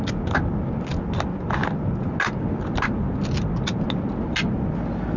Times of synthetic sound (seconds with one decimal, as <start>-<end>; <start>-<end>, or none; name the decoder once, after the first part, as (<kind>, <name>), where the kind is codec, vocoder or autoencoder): none